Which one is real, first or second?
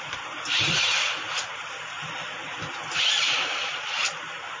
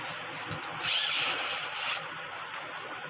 second